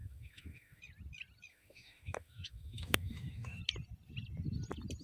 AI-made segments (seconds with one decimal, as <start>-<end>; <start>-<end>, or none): 0.0-0.8; 1.5-3.6